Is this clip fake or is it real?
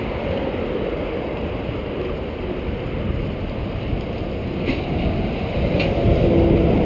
real